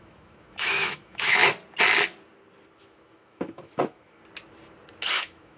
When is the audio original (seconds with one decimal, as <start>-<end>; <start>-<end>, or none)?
1.4-2.8; 4.2-5.1

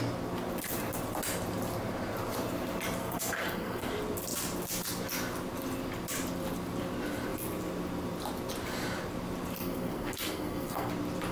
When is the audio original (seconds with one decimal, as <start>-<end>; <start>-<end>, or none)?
0.0-3.0; 3.9-9.6; 10.9-11.3

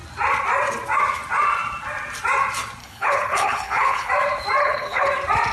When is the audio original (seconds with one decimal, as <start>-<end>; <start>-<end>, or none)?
0.0-2.8; 4.1-4.6; 5.1-5.5

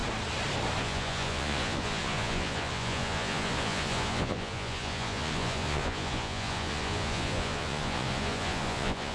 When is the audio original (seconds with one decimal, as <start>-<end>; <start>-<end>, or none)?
0.0-0.8

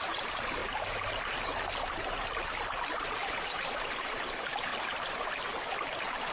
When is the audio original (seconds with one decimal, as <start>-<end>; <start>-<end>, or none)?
0.6-2.8; 4.7-6.3

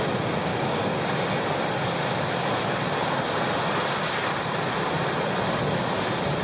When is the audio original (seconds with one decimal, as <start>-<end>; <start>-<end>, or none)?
0.0-0.5; 1.0-6.4

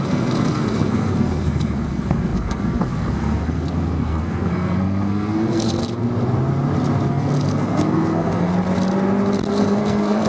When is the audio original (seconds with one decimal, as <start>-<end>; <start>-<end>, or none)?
6.0-7.1; 8.5-9.5

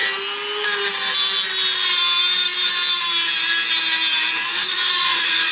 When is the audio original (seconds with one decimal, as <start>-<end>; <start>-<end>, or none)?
0.0-4.4